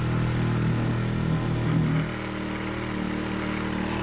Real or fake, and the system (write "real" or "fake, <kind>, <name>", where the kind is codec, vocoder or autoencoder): real